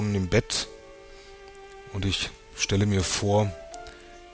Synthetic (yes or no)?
no